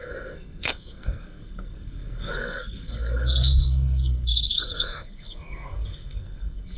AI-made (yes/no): yes